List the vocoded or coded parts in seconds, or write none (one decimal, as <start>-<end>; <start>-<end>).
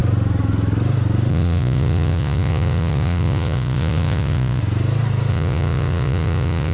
1.3-4.6; 5.3-6.7